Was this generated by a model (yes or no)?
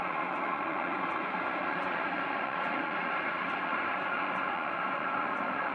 yes